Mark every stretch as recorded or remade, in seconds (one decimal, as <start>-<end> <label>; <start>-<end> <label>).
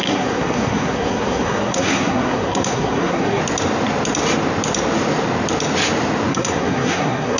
0.0-3.4 remade; 3.4-6.3 recorded; 6.3-7.4 remade